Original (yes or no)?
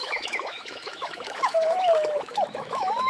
no